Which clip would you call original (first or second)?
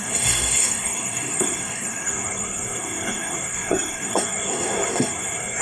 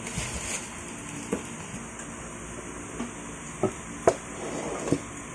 second